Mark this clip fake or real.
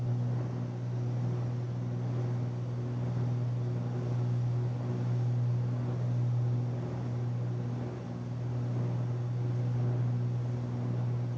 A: real